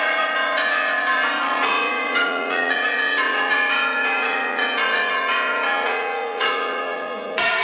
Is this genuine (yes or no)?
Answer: no